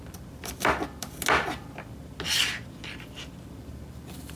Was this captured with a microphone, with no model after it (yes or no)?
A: no